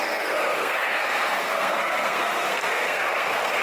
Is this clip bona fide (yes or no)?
no